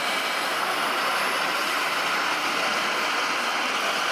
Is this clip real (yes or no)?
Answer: yes